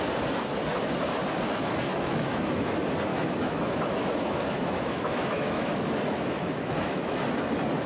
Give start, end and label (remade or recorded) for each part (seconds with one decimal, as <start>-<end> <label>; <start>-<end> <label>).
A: 0.0-1.9 recorded; 1.9-2.7 remade; 2.7-3.1 recorded; 3.1-7.2 remade; 7.2-7.9 recorded

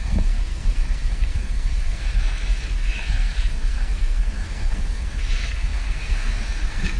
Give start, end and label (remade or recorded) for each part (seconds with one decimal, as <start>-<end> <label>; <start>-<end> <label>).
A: 0.0-7.0 remade

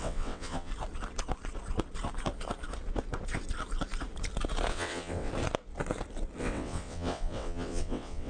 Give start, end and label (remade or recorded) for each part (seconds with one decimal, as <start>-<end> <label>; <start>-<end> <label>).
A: 0.0-0.7 remade; 0.7-4.7 recorded; 4.7-5.3 remade; 5.3-6.4 recorded; 6.4-8.3 remade

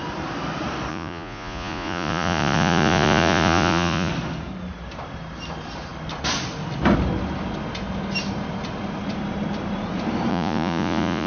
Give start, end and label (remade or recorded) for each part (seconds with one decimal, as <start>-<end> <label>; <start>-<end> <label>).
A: 0.0-0.9 recorded; 0.9-4.1 remade; 4.1-10.3 recorded; 10.3-11.3 remade